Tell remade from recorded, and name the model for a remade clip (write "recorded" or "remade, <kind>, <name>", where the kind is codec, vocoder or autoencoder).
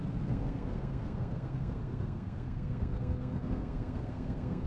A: remade, codec, SNAC